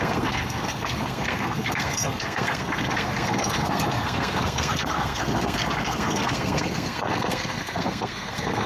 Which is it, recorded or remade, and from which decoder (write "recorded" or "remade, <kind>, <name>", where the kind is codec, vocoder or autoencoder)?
remade, codec, SNAC